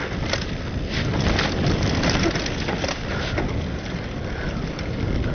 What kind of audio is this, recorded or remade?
recorded